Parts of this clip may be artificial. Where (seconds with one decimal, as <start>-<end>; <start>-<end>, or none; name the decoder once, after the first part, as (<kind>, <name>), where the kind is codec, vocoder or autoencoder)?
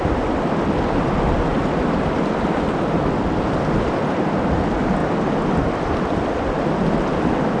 none